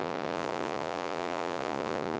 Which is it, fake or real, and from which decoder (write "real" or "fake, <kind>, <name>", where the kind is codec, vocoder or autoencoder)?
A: fake, vocoder, Vocos